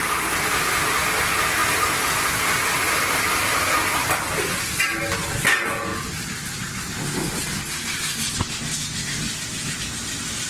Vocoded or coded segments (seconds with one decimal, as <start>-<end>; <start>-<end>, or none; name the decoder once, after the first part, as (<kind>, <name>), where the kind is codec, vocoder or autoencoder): none